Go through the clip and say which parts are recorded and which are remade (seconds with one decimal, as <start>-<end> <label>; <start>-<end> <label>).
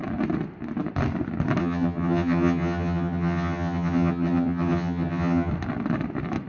0.0-1.6 recorded; 1.6-5.5 remade; 5.5-6.5 recorded